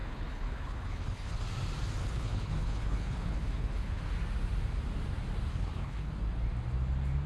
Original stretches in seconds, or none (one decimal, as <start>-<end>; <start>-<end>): 1.4-2.0; 4.0-5.5; 6.1-7.3